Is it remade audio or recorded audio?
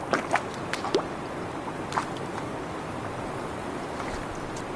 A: recorded